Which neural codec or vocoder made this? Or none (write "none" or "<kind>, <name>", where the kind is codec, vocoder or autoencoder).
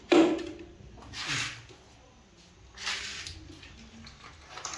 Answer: none